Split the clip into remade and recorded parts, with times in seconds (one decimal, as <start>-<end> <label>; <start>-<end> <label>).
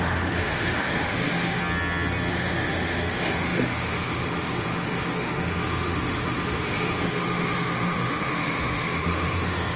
0.0-1.6 remade; 1.6-2.3 recorded; 2.3-9.8 remade